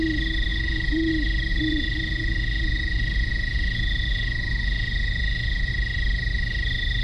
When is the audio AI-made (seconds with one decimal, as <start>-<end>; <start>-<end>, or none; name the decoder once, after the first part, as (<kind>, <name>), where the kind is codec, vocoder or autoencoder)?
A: 0.5-1.1 (vocoder, Vocos); 1.5-5.7